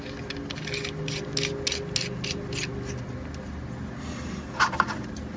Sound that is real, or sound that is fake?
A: real